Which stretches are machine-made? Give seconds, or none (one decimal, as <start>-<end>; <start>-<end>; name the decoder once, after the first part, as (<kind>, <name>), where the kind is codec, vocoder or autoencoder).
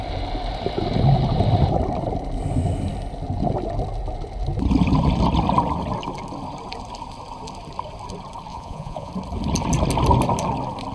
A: 8.5-9.1 (vocoder, Vocos)